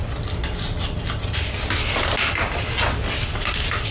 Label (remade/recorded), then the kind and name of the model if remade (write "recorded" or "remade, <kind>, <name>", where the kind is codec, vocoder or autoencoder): recorded